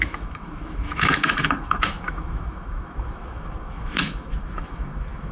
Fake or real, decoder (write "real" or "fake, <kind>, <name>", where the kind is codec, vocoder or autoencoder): fake, autoencoder, DAC-VAE